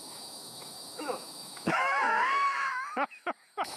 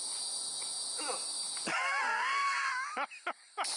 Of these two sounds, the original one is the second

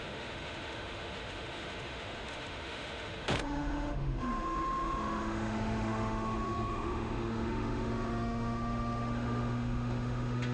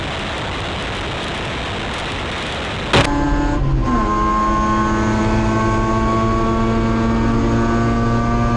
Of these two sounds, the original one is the second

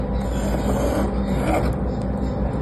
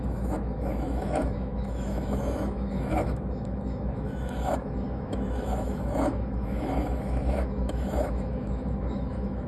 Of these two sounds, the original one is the first